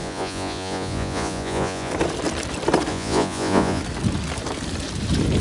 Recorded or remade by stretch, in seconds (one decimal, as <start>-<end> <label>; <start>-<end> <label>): 0.0-1.9 remade; 1.9-2.9 recorded; 2.9-3.8 remade; 3.8-5.4 recorded